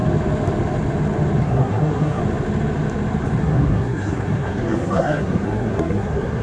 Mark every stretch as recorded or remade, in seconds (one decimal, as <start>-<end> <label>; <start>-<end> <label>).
0.0-1.4 recorded; 1.4-2.2 remade; 2.2-3.4 recorded; 3.4-6.4 remade